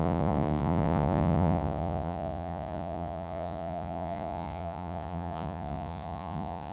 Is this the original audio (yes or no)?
no